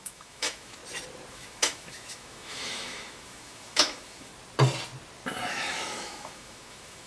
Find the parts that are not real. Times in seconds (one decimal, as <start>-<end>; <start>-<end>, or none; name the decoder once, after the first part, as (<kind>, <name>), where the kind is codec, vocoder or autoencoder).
0.0-0.8 (autoencoder, DAC-VAE); 1.3-4.3; 5.5-7.1